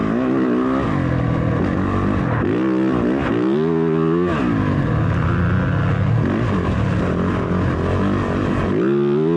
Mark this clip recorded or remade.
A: recorded